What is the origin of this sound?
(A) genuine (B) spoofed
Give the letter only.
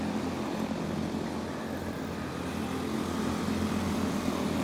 A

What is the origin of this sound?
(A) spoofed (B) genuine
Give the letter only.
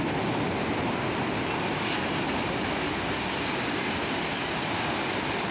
B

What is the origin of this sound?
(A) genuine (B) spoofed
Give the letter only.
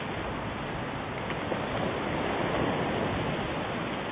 A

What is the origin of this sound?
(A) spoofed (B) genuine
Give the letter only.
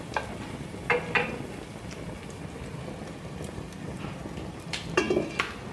B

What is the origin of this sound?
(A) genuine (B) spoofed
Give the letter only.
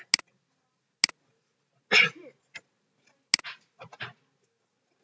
A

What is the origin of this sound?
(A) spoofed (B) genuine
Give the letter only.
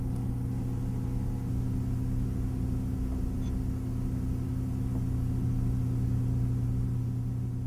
B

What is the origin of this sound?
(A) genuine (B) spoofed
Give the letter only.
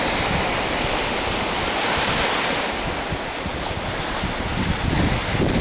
A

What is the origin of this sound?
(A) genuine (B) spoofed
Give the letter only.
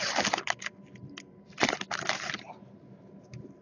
B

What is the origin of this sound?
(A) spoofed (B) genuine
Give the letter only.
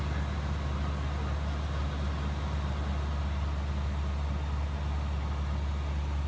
B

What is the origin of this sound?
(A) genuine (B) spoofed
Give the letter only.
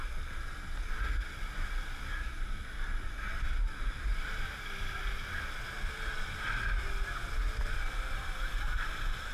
A